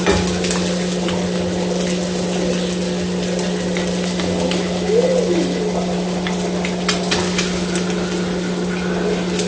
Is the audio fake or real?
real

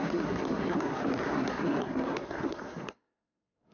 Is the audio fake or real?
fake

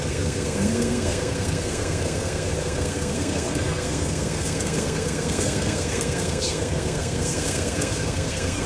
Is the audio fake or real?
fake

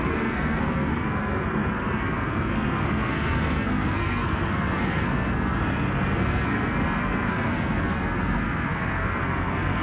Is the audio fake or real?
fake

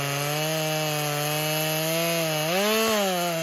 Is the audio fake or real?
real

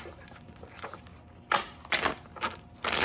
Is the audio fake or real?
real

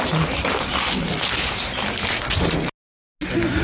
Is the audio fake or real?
real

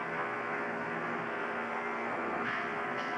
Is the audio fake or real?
fake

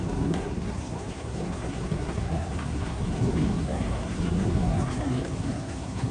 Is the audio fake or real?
fake